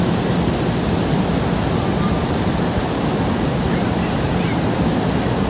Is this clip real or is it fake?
real